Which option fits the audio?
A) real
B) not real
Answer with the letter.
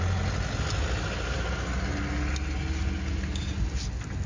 A